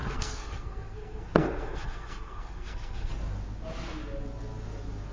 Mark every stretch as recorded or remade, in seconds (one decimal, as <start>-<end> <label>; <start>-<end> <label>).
0.0-3.1 remade; 3.1-5.1 recorded

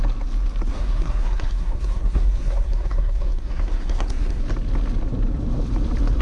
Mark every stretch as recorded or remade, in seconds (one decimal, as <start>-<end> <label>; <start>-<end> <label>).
0.0-0.7 recorded; 0.7-4.4 remade; 4.4-6.2 recorded

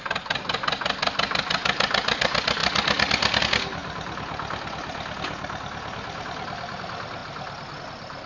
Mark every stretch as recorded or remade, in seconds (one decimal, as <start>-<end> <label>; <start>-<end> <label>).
0.0-8.3 recorded

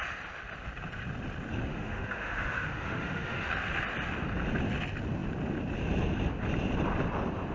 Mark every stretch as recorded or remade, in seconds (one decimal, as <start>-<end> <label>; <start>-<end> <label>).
0.0-1.7 recorded; 1.7-3.5 remade; 3.5-7.5 recorded

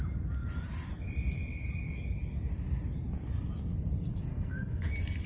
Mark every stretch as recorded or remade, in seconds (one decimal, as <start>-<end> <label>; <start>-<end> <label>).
0.0-4.3 recorded; 4.3-4.8 remade; 4.8-5.3 recorded

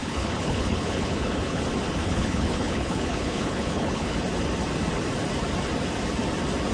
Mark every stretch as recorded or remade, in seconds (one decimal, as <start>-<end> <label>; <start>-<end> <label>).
0.0-1.6 remade; 1.6-2.0 recorded; 2.0-4.2 remade; 4.2-6.7 recorded

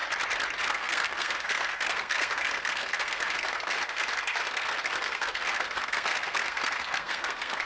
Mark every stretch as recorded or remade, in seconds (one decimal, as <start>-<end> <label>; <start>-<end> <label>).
0.0-0.6 recorded; 0.6-7.7 remade